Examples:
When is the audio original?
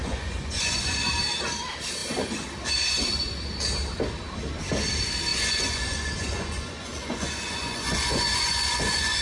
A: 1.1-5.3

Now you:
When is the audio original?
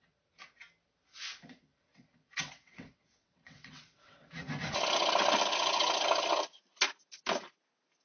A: 0.0-1.9; 4.3-8.0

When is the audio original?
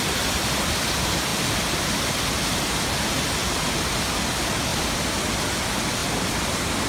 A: 0.0-6.9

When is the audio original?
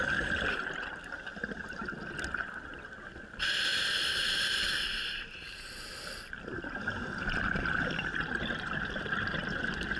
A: 0.0-3.7; 6.3-10.0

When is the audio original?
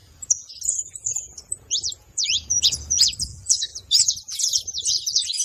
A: none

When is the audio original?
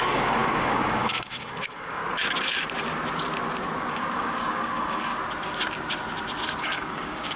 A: 2.0-3.9; 5.1-6.6